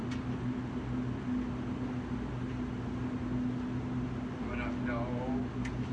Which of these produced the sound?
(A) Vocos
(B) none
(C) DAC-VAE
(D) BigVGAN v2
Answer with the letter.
B